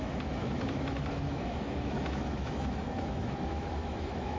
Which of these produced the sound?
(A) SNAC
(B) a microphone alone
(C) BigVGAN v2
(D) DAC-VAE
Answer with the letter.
D